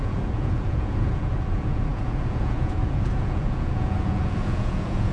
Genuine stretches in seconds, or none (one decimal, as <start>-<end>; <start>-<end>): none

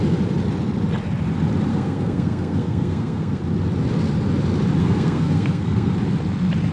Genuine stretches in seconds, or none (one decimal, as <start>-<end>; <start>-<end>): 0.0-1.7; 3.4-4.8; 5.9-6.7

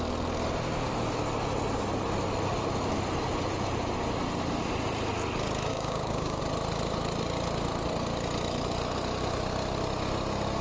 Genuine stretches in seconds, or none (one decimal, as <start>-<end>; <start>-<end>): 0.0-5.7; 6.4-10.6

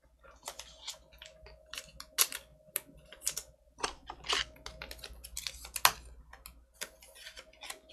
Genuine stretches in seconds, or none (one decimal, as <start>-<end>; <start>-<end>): 0.0-7.9

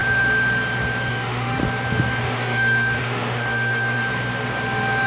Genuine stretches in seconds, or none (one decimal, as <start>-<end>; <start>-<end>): 0.0-1.1; 1.6-2.2; 4.1-5.1